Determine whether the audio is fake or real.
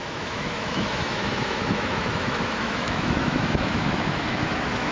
fake